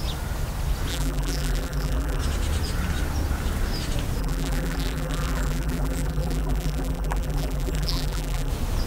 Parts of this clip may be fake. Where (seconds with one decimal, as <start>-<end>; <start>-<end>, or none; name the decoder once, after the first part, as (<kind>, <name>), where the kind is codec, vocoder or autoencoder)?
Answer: 0.9-2.2 (vocoder, BigVGAN v2); 4.2-8.5